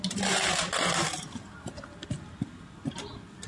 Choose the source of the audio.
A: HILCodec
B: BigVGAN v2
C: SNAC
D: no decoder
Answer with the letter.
D